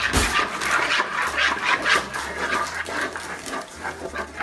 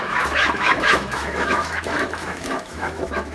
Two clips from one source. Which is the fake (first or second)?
second